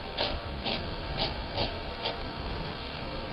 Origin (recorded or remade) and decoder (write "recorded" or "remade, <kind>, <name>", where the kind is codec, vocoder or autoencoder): remade, codec, SNAC